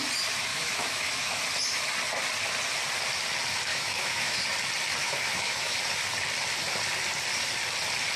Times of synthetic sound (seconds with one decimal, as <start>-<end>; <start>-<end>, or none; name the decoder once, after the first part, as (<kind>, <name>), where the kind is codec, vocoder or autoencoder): 0.5-1.4 (autoencoder, DAC-VAE); 3.7-4.4; 5.0-5.8